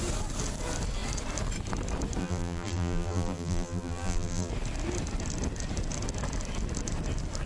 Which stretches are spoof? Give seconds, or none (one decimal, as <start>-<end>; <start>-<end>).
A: 2.2-4.5